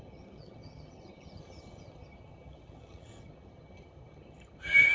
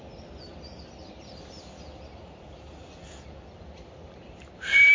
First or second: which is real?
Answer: second